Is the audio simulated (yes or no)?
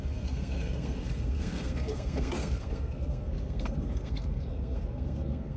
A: yes